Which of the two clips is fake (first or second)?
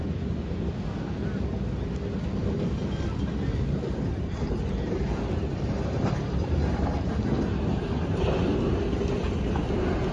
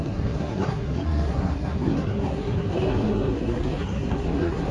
second